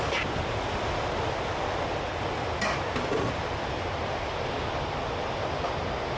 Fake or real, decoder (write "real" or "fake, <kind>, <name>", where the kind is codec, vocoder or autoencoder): real